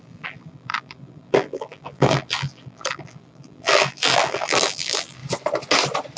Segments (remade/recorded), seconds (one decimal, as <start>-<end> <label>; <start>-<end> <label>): 0.0-5.2 remade; 5.2-6.2 recorded